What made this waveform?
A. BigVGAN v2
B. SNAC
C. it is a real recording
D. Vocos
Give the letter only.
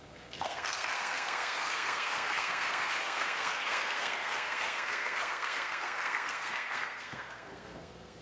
B